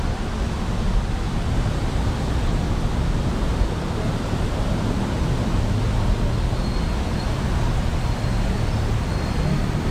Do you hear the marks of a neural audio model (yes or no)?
no